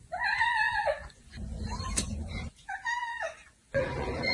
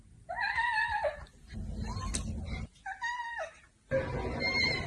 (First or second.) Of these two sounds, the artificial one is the first